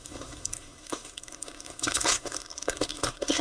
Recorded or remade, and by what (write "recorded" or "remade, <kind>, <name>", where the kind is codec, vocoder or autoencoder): remade, codec, SNAC